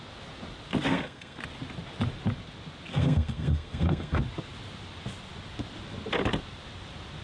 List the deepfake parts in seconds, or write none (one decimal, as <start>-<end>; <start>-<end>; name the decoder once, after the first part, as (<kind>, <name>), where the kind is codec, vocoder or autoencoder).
0.9-1.4 (codec, SNAC); 2.9-4.2